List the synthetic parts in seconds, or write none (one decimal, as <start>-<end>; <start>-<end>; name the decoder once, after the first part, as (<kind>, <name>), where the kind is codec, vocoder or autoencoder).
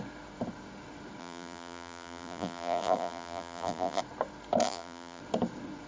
1.2-4.0 (vocoder, BigVGAN v2); 4.6-5.2